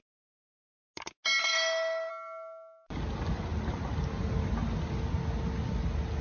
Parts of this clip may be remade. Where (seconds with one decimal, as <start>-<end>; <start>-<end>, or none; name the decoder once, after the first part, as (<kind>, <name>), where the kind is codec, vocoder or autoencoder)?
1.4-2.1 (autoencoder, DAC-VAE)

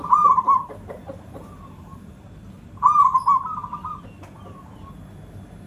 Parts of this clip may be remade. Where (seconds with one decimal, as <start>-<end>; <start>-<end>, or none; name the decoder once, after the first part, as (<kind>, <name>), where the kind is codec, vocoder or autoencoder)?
0.0-1.0 (vocoder, BigVGAN v2); 1.8-3.1; 5.3-5.7

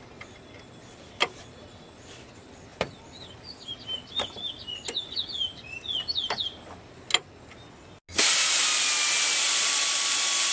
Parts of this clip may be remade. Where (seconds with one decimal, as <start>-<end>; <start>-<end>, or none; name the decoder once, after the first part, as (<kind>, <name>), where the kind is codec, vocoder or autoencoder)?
none

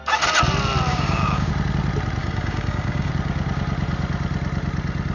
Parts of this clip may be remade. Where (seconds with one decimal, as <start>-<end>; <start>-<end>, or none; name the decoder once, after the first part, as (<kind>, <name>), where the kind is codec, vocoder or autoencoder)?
0.9-1.5 (codec, DAC); 2.2-3.1

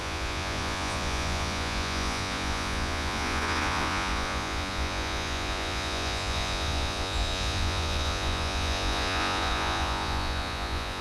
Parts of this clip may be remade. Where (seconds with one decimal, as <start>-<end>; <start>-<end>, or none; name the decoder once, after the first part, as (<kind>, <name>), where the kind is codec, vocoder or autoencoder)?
0.0-11.0 (vocoder, Vocos)

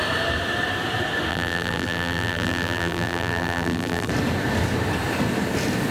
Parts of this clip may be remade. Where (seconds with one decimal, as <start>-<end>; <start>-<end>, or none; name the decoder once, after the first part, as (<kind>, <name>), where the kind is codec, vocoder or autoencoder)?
1.3-4.1 (vocoder, BigVGAN v2)

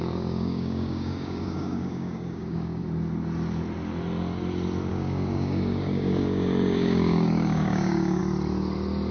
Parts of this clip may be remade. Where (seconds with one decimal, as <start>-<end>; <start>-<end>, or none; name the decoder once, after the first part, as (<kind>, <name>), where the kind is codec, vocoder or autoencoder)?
0.0-2.8 (codec, DAC); 4.9-8.2

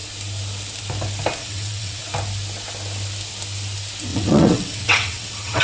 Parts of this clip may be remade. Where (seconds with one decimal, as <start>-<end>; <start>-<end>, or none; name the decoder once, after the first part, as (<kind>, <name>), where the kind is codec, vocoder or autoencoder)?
1.4-2.0 (vocoder, WaveNeXt); 4.1-5.6